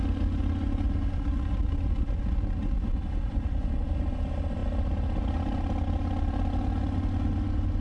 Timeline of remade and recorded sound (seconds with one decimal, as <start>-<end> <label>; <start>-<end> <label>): 0.0-7.8 recorded